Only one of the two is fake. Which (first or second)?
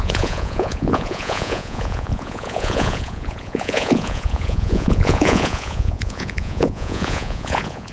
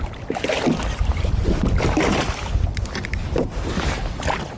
first